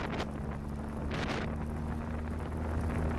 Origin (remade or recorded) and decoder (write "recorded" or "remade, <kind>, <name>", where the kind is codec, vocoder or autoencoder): recorded